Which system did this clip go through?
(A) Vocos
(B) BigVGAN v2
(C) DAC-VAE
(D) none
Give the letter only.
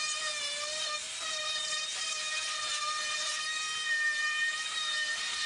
B